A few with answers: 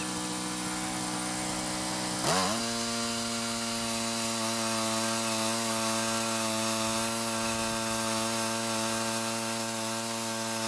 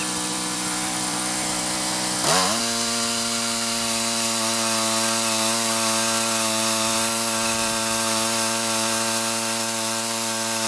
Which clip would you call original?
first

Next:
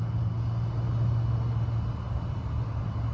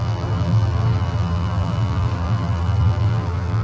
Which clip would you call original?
first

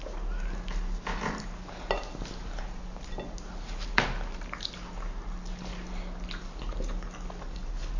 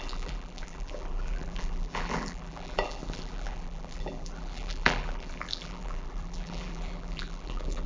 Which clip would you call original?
first